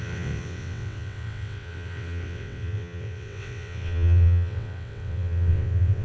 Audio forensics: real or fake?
fake